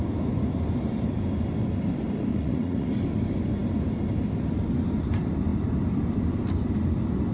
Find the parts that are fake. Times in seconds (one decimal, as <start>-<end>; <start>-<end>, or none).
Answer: 2.3-2.9